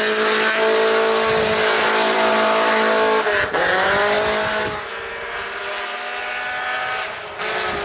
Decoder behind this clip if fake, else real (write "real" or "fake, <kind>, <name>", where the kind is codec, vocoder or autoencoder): real